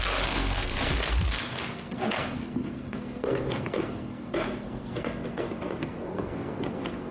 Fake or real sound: fake